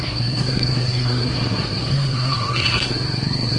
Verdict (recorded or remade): remade